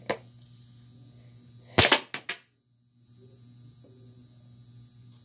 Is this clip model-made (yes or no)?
no